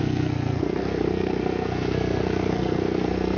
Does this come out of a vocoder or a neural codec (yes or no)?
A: yes